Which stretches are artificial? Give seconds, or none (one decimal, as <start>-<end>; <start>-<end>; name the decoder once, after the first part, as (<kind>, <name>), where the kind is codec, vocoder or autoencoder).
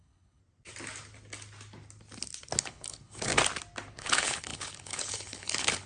0.0-0.4 (codec, HILCodec); 2.6-3.3; 3.9-5.9